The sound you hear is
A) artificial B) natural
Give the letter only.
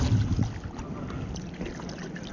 B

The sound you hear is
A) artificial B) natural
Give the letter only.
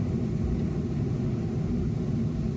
B